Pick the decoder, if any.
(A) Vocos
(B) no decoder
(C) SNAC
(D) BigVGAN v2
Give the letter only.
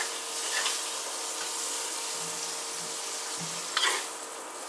B